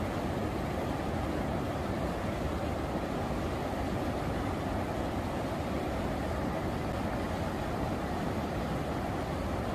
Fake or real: real